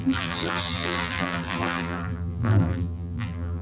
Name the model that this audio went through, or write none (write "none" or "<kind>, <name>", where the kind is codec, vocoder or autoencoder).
vocoder, BigVGAN v2